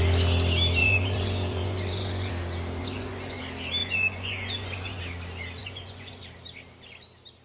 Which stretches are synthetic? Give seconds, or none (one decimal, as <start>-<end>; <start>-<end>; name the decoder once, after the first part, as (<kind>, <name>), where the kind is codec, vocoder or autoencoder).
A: 0.8-2.3 (vocoder, Vocos); 2.8-3.4; 3.8-5.0; 5.6-6.2